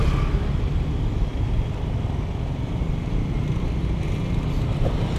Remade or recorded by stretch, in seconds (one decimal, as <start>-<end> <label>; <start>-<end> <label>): 0.0-5.2 recorded